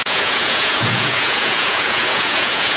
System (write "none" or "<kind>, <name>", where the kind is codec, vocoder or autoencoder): vocoder, Vocos